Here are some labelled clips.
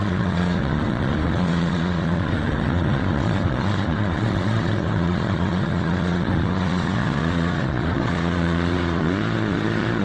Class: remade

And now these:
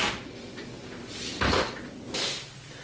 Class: recorded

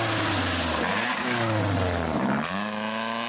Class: recorded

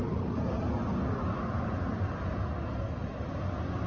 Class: recorded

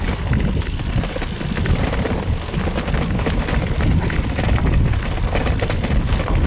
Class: recorded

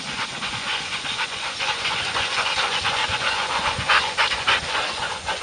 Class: remade